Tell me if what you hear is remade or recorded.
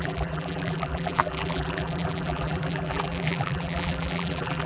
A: remade